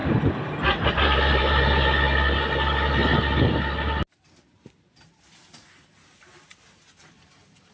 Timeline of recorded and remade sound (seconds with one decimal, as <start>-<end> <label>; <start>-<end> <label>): 0.0-7.7 recorded